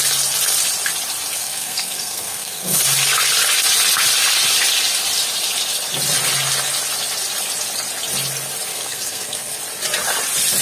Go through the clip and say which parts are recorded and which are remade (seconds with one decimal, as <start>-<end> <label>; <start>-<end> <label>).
0.0-1.4 recorded; 1.4-2.8 remade; 2.8-8.7 recorded; 8.7-9.6 remade; 9.6-10.6 recorded